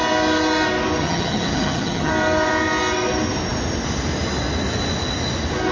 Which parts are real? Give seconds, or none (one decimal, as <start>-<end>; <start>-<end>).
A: 0.0-1.0; 2.1-5.7